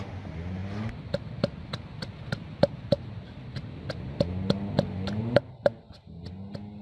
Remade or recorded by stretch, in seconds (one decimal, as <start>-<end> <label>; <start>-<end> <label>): 0.0-6.8 recorded